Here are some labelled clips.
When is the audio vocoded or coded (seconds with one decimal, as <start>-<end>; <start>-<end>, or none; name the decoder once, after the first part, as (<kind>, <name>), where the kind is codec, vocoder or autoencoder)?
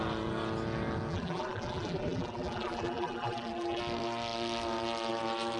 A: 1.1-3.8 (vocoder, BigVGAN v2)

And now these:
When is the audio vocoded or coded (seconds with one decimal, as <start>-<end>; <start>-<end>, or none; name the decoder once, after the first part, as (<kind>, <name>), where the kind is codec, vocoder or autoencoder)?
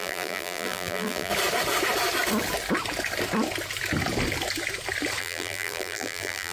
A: 0.0-1.3 (vocoder, BigVGAN v2); 5.2-6.5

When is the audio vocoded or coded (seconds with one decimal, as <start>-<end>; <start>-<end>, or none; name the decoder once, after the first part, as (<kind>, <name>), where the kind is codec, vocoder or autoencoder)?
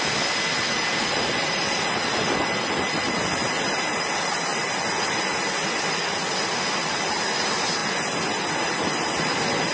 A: none